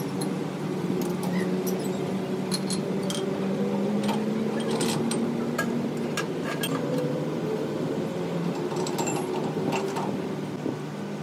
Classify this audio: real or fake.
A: real